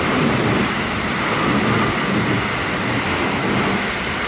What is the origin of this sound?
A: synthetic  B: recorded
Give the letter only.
B